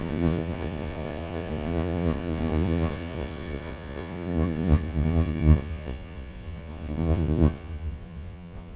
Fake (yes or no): yes